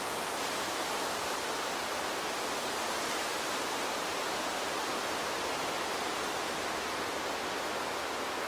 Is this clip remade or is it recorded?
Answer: recorded